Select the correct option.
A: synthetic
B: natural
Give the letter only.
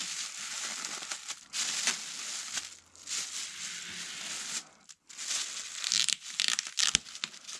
B